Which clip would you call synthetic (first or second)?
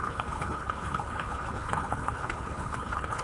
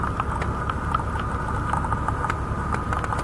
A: first